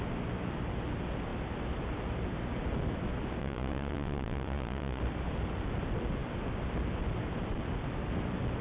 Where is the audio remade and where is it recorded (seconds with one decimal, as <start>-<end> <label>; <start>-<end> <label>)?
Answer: 0.0-3.4 recorded; 3.4-5.0 remade; 5.0-8.6 recorded